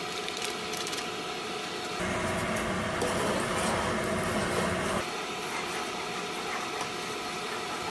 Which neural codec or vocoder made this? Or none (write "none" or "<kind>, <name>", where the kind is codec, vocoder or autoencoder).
none